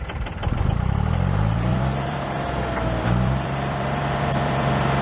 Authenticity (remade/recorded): remade